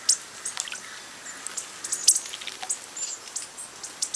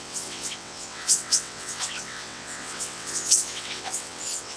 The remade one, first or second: second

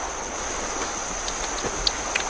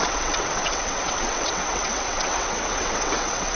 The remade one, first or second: second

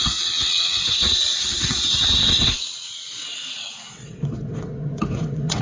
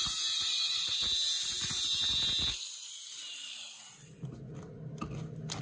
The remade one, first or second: first